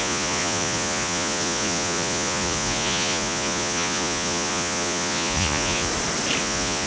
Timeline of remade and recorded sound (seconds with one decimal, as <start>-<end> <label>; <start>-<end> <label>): 0.0-5.9 remade; 5.9-6.4 recorded; 6.4-6.9 remade